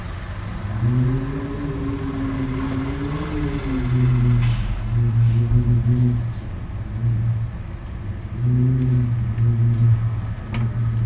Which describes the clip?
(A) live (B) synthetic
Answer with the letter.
A